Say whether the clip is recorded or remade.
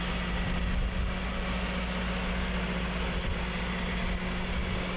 recorded